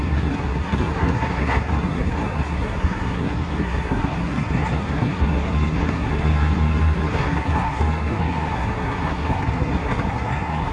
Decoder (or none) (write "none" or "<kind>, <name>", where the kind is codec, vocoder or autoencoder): codec, SNAC